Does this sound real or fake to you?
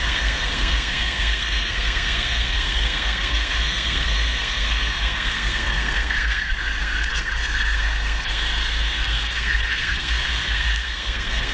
fake